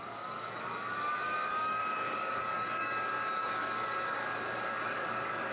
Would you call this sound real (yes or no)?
no